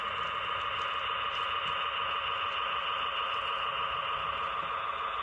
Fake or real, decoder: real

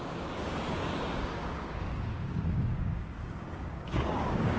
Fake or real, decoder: fake, codec, DAC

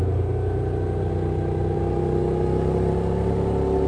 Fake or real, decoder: real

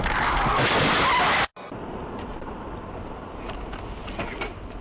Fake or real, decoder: real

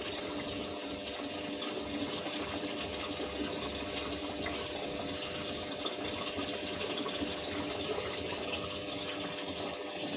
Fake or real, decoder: real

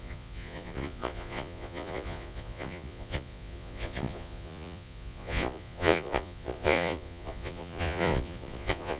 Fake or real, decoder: fake, vocoder, Vocos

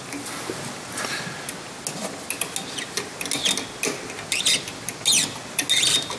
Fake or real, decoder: real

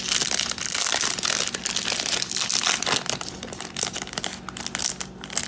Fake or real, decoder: real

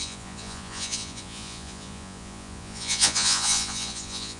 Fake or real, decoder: fake, vocoder, Vocos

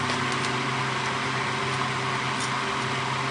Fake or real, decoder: real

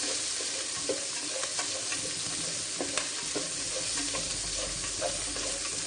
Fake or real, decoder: real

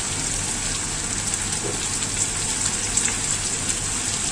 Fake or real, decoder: real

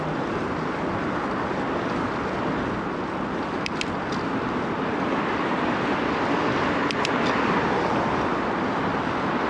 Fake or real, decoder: real